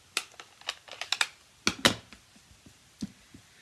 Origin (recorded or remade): recorded